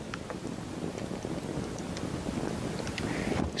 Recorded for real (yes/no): yes